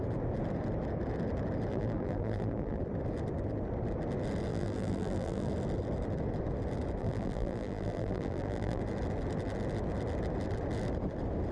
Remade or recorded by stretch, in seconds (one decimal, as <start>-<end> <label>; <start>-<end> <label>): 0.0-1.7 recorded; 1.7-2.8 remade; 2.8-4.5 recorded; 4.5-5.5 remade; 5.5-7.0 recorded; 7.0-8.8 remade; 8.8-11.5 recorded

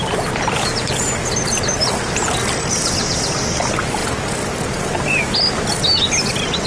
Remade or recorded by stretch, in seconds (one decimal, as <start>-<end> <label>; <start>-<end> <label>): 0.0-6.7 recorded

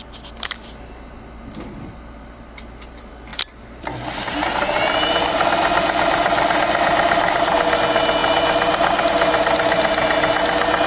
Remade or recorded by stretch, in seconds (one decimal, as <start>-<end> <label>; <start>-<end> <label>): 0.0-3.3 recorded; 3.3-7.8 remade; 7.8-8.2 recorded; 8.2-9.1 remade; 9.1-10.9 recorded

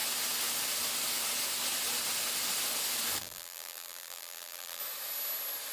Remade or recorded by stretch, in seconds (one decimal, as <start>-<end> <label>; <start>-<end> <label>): 0.0-3.2 recorded; 3.2-4.8 remade; 4.8-5.7 recorded